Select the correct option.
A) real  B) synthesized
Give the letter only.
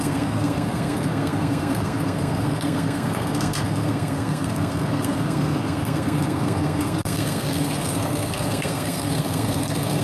B